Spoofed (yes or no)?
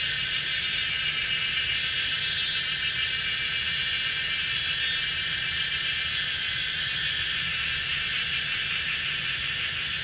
no